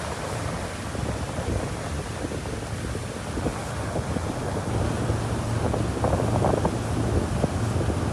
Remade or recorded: recorded